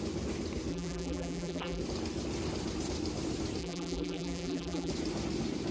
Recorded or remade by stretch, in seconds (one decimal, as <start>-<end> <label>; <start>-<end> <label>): 0.0-0.7 recorded; 0.7-1.8 remade; 1.8-3.6 recorded; 3.6-4.9 remade; 4.9-5.7 recorded

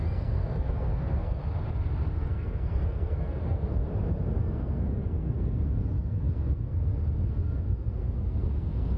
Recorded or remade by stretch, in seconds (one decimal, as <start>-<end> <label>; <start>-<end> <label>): 0.0-1.4 remade; 1.4-2.1 recorded; 2.1-3.8 remade; 3.8-4.4 recorded; 4.4-9.0 remade

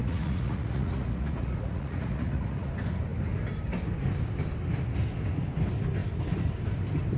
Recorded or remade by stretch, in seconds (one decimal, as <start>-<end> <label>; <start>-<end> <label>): 0.0-2.7 remade; 2.7-7.2 recorded

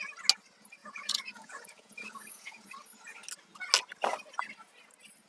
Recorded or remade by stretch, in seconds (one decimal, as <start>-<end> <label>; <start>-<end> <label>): 0.0-0.8 recorded; 0.8-2.7 remade; 2.7-5.3 recorded

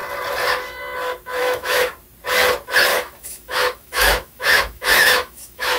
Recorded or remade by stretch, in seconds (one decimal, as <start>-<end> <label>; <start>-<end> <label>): 0.0-1.4 recorded; 1.4-1.9 remade; 1.9-2.9 recorded; 2.9-5.8 remade

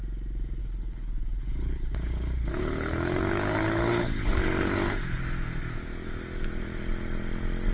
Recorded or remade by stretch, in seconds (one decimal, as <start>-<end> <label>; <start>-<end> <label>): 0.0-0.6 recorded; 0.6-5.2 remade; 5.2-7.7 recorded